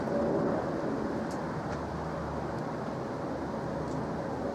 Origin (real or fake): real